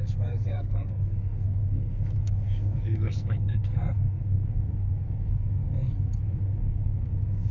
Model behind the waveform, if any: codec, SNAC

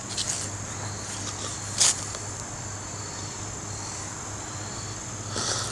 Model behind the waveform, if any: none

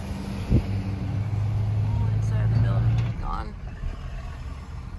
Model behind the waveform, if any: none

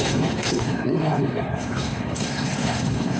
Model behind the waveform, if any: codec, SNAC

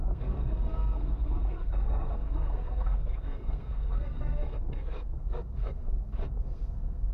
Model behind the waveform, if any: codec, SNAC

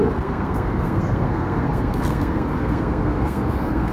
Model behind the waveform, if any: codec, SNAC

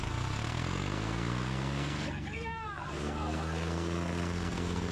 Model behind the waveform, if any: codec, SNAC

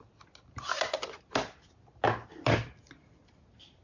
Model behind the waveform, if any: none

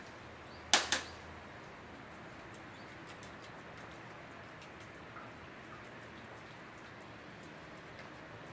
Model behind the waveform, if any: none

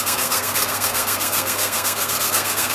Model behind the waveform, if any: codec, SNAC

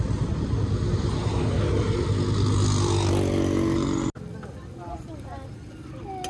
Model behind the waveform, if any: none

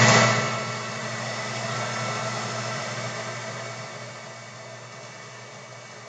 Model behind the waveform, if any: none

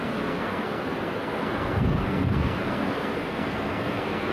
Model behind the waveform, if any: codec, SNAC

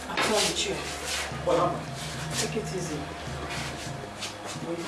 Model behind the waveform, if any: none